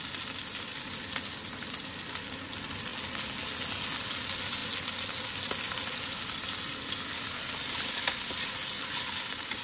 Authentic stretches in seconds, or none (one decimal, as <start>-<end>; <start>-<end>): 0.0-9.6